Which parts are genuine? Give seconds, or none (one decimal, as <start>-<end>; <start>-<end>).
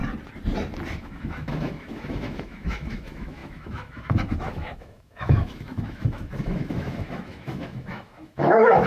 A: 0.0-1.0